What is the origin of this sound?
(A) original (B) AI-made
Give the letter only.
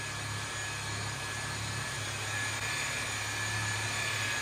A